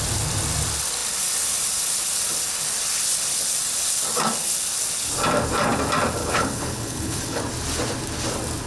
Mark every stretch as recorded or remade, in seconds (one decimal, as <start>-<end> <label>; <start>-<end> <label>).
0.0-6.2 recorded; 6.2-7.4 remade; 7.4-8.7 recorded